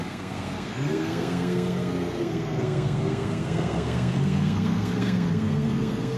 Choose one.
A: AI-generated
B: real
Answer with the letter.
A